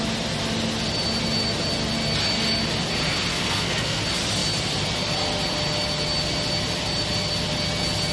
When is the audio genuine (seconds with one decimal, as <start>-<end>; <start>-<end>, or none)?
0.0-3.3; 4.0-8.1